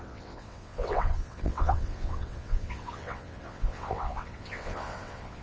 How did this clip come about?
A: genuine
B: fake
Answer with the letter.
B